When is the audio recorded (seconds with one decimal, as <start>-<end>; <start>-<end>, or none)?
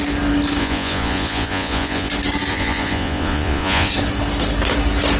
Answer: 0.0-0.6; 2.1-2.5; 3.9-5.2